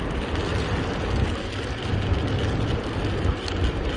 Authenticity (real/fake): real